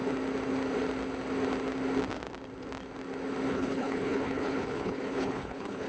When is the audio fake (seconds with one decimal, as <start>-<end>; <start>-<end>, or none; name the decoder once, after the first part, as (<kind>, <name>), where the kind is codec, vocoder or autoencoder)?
3.5-5.9 (codec, HILCodec)

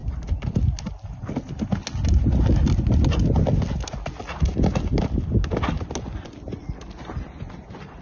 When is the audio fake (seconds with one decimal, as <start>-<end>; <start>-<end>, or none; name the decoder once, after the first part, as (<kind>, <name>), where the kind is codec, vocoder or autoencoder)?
none

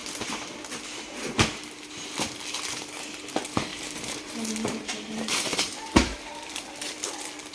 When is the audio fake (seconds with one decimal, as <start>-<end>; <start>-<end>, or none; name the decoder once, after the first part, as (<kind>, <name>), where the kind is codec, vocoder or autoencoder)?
3.7-7.1 (vocoder, BigVGAN v2)

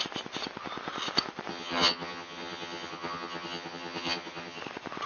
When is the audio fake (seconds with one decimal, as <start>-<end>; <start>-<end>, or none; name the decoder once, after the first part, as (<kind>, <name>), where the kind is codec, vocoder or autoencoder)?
1.5-4.6 (vocoder, HiFi-GAN)